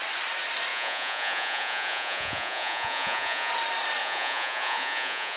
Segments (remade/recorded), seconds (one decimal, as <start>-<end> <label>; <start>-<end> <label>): 0.0-0.7 recorded; 0.7-3.5 remade; 3.5-4.0 recorded; 4.0-5.4 remade